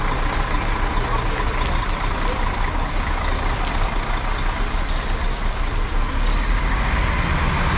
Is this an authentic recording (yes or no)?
yes